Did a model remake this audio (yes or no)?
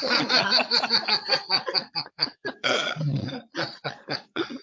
yes